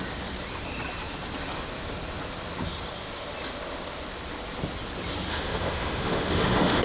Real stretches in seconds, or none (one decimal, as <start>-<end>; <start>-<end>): 0.0-5.3